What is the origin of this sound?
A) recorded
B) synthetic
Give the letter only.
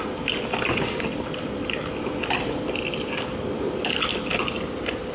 A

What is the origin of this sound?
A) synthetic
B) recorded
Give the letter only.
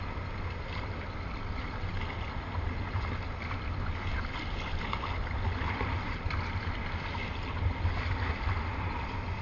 B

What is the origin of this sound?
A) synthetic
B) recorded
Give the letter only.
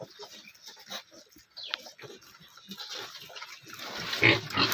B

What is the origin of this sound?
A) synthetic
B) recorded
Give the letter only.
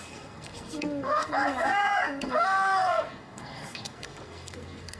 A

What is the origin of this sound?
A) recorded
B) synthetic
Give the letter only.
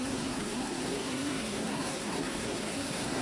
B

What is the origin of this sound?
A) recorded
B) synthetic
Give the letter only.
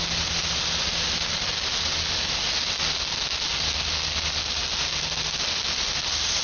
A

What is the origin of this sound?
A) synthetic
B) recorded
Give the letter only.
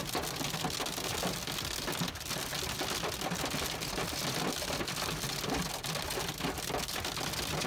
B